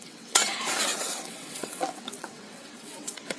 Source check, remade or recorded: remade